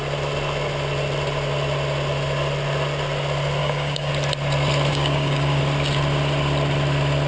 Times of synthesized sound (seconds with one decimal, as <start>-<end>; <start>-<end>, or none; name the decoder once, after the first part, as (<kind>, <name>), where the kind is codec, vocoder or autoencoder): 3.6-4.1 (codec, DAC); 4.9-5.6